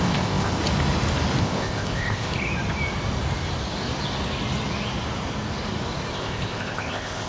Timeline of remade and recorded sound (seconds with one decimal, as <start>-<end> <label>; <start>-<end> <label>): 0.0-0.6 remade; 0.6-1.4 recorded; 1.4-2.3 remade; 2.3-6.1 recorded; 6.1-7.3 remade